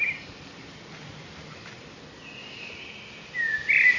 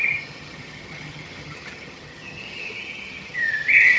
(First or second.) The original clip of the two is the first